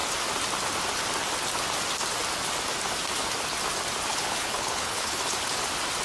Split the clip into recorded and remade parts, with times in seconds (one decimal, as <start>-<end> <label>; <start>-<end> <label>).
0.0-4.1 recorded; 4.1-5.2 remade; 5.2-6.0 recorded

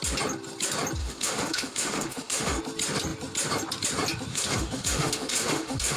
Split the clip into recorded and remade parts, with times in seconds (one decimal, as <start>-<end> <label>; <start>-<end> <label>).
0.0-1.0 recorded; 1.0-2.6 remade; 2.6-4.3 recorded; 4.3-6.0 remade

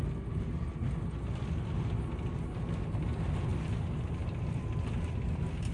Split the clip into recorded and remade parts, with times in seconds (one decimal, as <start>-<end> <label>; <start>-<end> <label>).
0.0-5.7 recorded

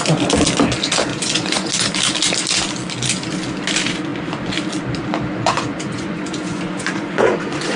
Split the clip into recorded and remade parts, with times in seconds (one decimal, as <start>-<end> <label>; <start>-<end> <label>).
0.0-1.1 recorded; 1.1-1.7 remade; 1.7-5.3 recorded; 5.3-7.8 remade

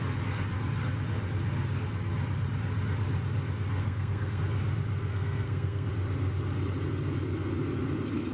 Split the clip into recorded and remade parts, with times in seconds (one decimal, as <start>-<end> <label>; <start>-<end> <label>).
0.0-3.8 recorded; 3.8-4.4 remade; 4.4-5.0 recorded; 5.0-5.9 remade; 5.9-8.3 recorded

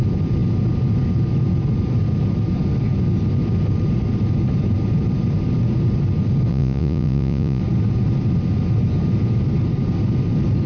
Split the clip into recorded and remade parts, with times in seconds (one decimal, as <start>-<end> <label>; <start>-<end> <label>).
0.0-6.5 recorded; 6.5-7.6 remade; 7.6-10.7 recorded